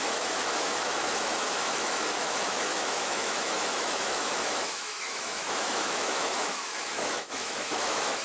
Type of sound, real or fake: fake